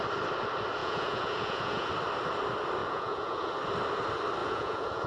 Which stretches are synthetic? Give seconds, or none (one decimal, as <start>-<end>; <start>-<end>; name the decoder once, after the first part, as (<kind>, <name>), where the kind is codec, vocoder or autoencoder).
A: 0.8-1.9 (vocoder, Vocos); 2.8-3.5; 4.4-5.1